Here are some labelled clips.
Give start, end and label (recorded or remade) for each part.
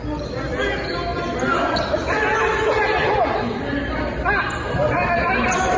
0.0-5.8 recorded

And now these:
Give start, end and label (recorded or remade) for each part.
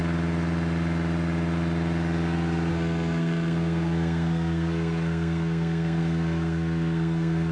0.0-2.7 recorded; 2.7-7.5 remade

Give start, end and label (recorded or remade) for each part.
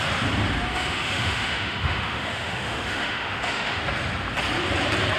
0.0-0.7 recorded; 0.7-3.8 remade; 3.8-5.2 recorded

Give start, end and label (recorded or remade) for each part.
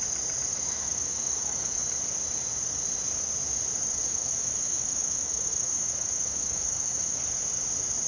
0.0-0.5 recorded; 0.5-1.8 remade; 1.8-4.1 recorded; 4.1-7.2 remade; 7.2-8.1 recorded